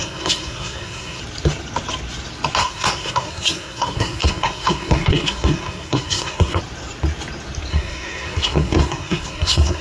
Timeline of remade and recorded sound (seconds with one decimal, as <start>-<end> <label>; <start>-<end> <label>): 0.0-1.2 remade; 1.2-2.6 recorded; 2.6-6.6 remade; 6.6-7.7 recorded; 7.7-9.8 remade